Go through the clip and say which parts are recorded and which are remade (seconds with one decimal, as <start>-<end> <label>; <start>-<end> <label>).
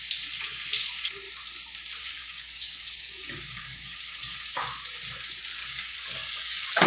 0.0-2.0 recorded; 2.0-4.6 remade; 4.6-5.6 recorded; 5.6-6.9 remade